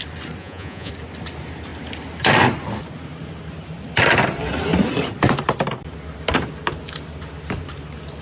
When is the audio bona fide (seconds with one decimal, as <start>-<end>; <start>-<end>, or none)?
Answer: 0.0-0.4; 0.9-8.2